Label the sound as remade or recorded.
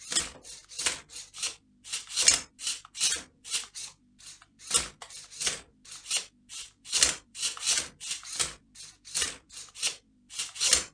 recorded